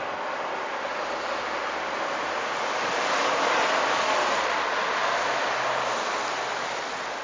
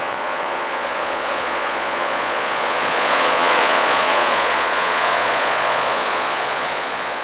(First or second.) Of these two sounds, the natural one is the first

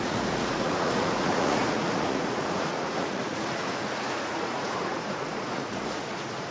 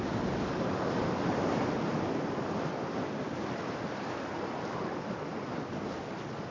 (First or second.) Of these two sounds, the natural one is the second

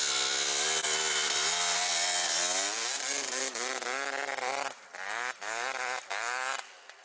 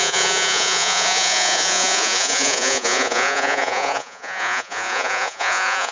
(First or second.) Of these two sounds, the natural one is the first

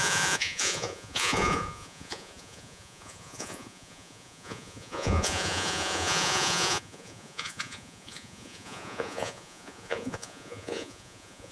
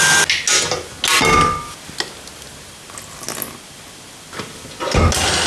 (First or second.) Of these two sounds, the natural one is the second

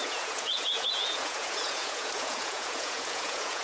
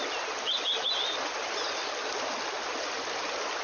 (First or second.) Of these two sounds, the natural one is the second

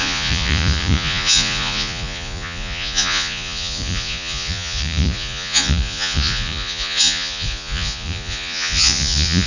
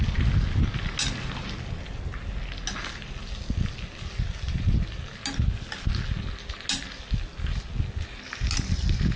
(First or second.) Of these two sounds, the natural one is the second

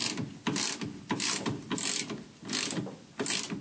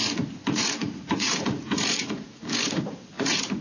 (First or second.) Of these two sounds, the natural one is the first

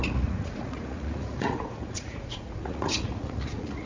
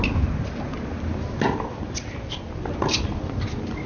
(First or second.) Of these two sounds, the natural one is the second